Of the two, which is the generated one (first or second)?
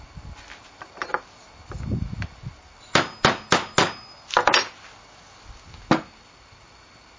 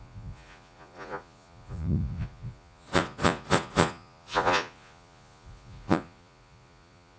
second